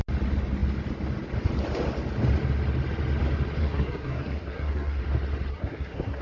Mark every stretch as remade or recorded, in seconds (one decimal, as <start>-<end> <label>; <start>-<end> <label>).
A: 0.0-3.6 recorded; 3.6-5.0 remade; 5.0-5.5 recorded; 5.5-6.2 remade